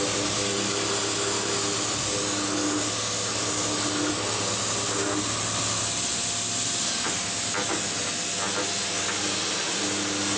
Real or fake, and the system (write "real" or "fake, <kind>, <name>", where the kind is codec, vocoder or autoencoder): real